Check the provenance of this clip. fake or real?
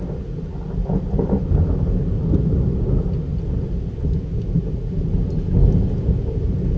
real